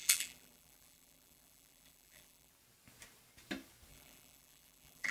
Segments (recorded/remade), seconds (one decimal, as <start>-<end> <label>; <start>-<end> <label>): 0.0-2.5 remade; 2.5-3.9 recorded; 3.9-5.1 remade